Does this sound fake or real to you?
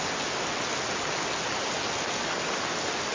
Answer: real